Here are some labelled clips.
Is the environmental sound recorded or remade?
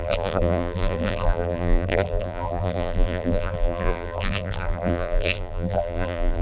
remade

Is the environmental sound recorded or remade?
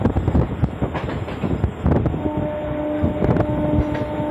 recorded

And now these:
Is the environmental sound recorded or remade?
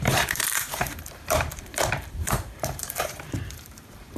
remade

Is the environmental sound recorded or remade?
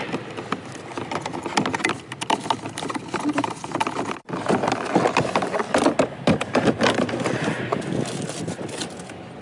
recorded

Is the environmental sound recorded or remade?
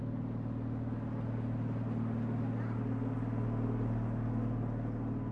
recorded